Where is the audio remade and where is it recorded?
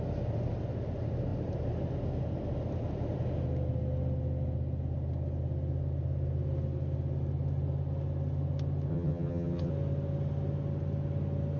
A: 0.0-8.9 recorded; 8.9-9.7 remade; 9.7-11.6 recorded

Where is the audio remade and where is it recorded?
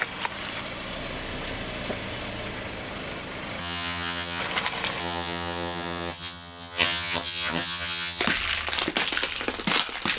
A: 0.0-3.6 recorded; 3.6-4.4 remade; 4.4-5.0 recorded; 5.0-8.2 remade; 8.2-10.2 recorded